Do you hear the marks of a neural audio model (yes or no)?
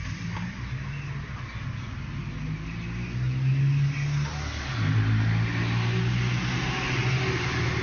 no